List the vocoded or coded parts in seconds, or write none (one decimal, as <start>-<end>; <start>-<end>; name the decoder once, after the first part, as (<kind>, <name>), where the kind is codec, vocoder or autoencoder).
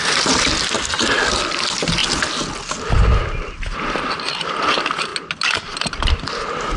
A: none